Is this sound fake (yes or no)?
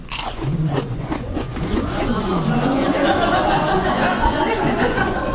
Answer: yes